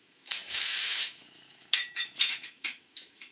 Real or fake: fake